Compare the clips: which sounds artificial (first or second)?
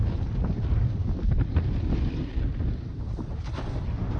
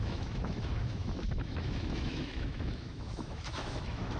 second